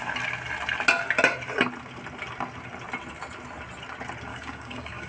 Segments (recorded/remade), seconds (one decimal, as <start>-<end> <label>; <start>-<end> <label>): 0.0-4.3 recorded; 4.3-5.1 remade